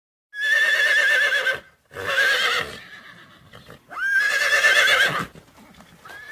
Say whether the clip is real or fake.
real